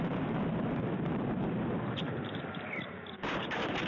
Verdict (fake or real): fake